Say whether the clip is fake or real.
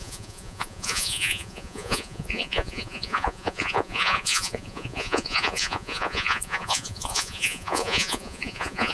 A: fake